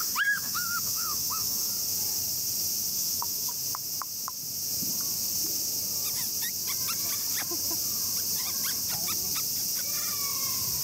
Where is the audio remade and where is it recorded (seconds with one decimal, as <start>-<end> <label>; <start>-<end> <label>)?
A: 0.0-1.7 remade; 1.7-2.9 recorded; 2.9-3.5 remade; 3.5-10.8 recorded